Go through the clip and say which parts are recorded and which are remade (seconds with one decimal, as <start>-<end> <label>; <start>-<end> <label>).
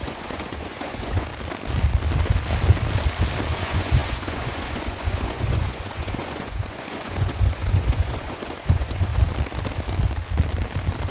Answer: 0.0-1.3 remade; 1.3-3.5 recorded; 3.5-9.1 remade; 9.1-11.1 recorded